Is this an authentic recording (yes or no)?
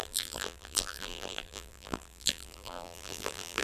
no